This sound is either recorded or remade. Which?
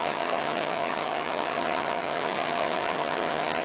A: remade